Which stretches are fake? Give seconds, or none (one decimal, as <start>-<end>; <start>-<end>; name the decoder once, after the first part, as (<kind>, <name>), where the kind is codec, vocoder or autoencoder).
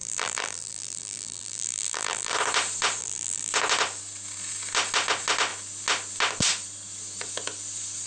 0.0-2.3 (vocoder, BigVGAN v2); 3.0-3.5